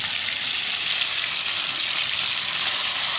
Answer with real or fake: real